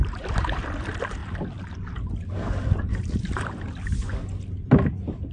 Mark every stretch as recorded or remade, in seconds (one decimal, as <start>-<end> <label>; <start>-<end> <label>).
0.0-0.6 remade; 0.6-2.9 recorded; 2.9-3.6 remade; 3.6-5.3 recorded